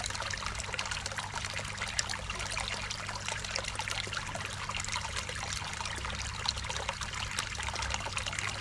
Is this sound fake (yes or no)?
no